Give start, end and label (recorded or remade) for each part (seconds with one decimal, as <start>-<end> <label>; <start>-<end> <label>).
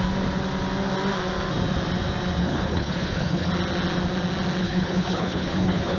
0.0-2.4 recorded; 2.4-3.5 remade; 3.5-4.6 recorded; 4.6-6.0 remade